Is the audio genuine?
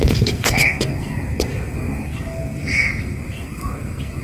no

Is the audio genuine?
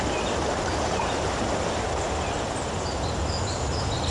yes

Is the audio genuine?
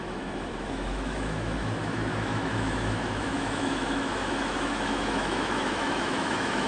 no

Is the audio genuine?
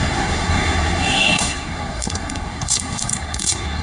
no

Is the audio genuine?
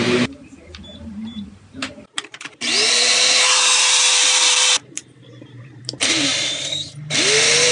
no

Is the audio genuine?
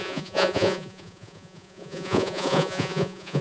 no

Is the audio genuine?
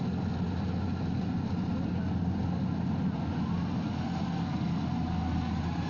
yes